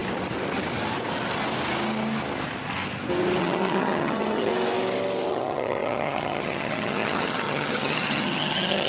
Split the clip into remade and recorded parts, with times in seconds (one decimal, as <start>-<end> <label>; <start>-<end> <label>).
0.0-3.4 recorded; 3.4-4.5 remade; 4.5-5.3 recorded; 5.3-8.9 remade